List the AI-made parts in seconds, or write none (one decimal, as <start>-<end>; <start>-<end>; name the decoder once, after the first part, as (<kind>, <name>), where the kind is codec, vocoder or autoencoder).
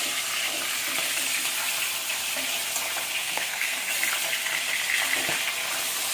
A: 3.2-3.9 (codec, SNAC)